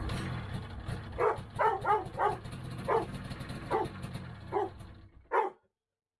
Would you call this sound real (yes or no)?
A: yes